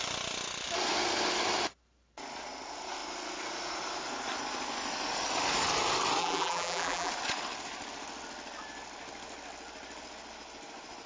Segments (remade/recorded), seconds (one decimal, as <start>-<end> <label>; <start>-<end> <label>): 0.0-6.2 recorded; 6.2-7.1 remade; 7.1-11.1 recorded